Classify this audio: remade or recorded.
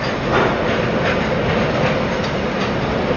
recorded